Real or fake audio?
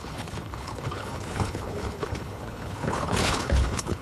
fake